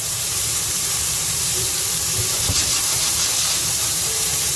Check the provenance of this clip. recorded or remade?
remade